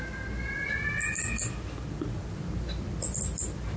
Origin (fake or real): real